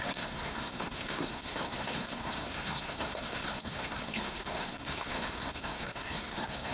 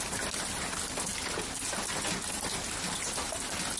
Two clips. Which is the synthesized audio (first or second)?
first